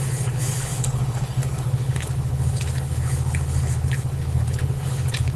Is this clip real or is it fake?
fake